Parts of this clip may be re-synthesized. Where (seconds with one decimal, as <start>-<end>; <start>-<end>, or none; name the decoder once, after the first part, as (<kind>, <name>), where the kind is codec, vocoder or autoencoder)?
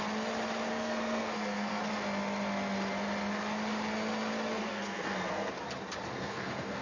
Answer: 0.7-1.8 (codec, SNAC); 4.7-5.5; 6.1-6.8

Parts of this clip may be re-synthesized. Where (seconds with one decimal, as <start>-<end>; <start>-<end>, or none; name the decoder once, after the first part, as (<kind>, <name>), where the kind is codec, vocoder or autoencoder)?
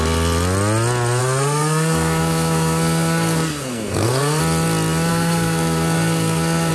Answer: 1.2-4.4 (codec, SNAC); 5.1-6.7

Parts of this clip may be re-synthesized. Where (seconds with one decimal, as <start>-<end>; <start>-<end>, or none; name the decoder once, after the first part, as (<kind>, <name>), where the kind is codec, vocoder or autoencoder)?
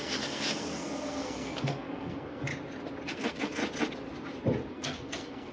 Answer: 0.0-2.5 (codec, SNAC); 3.1-3.6; 4.7-5.5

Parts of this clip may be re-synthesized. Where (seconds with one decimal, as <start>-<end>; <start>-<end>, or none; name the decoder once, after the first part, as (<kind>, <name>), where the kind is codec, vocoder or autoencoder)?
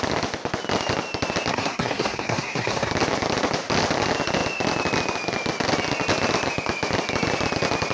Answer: 1.5-2.9 (codec, SNAC)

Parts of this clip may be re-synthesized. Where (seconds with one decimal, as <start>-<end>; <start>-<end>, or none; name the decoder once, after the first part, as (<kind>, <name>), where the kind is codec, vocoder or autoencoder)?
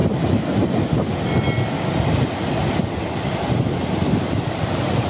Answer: none